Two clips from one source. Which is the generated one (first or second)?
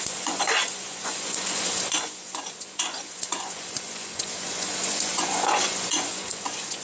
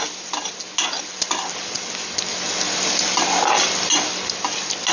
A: first